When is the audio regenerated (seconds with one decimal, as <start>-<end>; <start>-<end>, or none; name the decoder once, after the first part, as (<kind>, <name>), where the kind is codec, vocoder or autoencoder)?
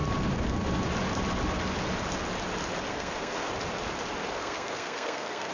2.9-3.5 (codec, SNAC); 4.2-5.5